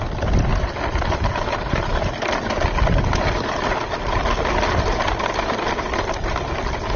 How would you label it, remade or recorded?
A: recorded